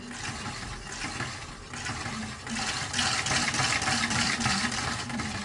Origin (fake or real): real